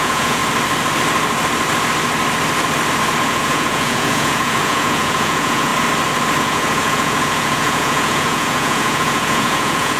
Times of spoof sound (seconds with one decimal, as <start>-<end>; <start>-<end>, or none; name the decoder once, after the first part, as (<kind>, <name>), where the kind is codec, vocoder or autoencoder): 0.0-0.4 (vocoder, Vocos); 3.2-5.7; 6.4-10.0